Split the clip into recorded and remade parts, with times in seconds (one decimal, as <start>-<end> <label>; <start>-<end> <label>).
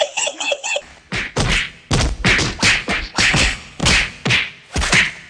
0.0-0.9 remade; 0.9-3.0 recorded; 3.0-3.8 remade; 3.8-5.3 recorded